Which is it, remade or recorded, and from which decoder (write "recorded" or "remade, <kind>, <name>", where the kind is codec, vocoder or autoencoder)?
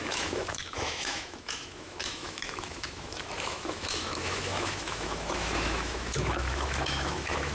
remade, autoencoder, DAC-VAE